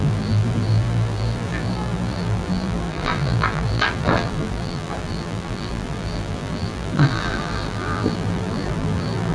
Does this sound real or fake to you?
fake